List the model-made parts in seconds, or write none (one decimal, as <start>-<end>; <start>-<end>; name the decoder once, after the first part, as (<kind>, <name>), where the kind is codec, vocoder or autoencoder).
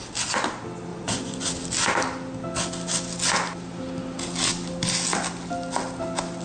0.9-1.5 (vocoder, Vocos)